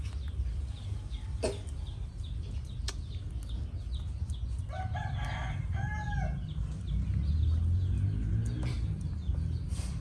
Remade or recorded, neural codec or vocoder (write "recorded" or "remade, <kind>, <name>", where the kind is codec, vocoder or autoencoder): recorded